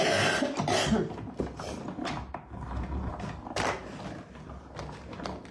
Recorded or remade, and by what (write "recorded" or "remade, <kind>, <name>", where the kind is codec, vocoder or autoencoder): recorded